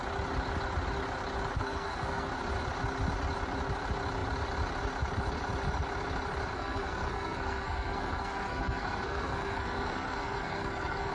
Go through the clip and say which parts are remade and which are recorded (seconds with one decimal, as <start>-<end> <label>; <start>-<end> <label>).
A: 0.0-1.6 recorded; 1.6-2.3 remade; 2.3-6.5 recorded; 6.5-11.1 remade